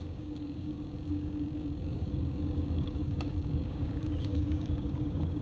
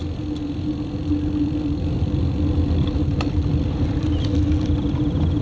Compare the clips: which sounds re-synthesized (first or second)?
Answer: first